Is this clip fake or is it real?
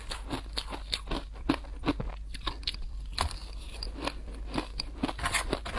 real